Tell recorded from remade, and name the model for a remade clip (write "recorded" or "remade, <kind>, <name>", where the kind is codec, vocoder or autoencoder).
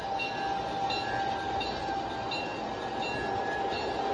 recorded